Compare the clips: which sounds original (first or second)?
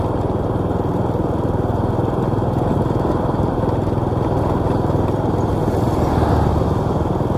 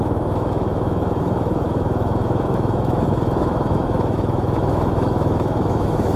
first